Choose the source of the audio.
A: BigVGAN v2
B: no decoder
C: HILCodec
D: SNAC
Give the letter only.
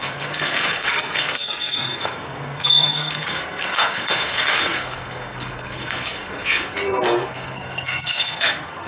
D